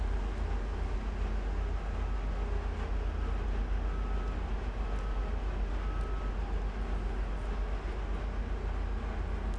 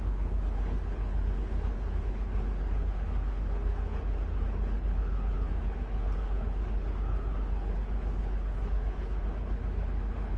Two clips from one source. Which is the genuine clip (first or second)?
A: first